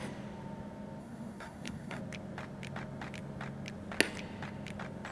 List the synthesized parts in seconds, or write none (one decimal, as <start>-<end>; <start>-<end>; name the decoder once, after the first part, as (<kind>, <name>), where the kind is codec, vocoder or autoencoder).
1.0-2.0 (codec, SNAC)